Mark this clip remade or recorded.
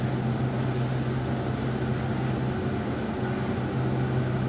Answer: recorded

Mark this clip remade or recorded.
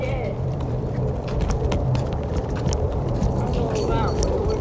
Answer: remade